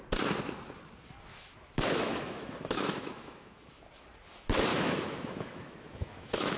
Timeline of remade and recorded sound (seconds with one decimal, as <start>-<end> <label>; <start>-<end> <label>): 0.0-1.3 recorded; 1.3-3.8 remade; 3.8-4.7 recorded; 4.7-6.6 remade